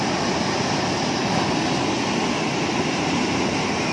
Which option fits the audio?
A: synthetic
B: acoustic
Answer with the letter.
B